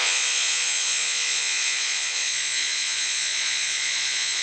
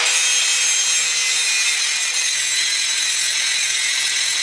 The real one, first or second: second